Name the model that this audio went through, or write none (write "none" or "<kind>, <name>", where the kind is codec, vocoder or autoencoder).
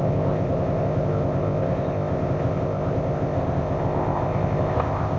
codec, ZipCodec